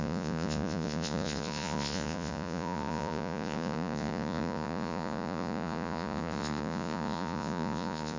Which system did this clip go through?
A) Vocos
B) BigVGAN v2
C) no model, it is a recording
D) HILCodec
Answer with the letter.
A